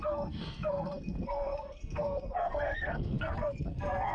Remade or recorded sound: remade